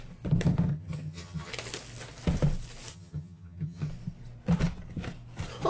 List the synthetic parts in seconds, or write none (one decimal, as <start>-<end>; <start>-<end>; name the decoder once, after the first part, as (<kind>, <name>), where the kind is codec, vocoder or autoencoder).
0.7-1.5 (vocoder, HiFi-GAN); 2.9-3.9